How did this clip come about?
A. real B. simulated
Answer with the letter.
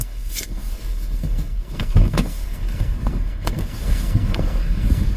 B